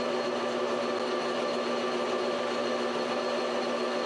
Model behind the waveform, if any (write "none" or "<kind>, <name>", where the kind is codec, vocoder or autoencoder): none